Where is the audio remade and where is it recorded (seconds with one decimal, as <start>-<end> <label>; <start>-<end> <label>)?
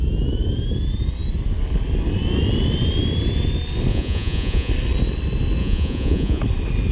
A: 0.0-3.9 recorded; 3.9-4.7 remade; 4.7-5.6 recorded; 5.6-6.4 remade; 6.4-6.9 recorded